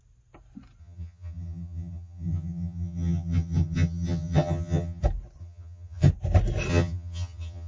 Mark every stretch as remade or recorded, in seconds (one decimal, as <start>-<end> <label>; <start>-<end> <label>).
0.0-0.8 recorded; 0.8-5.0 remade; 5.0-5.4 recorded; 5.4-6.1 remade; 6.1-6.7 recorded; 6.7-7.7 remade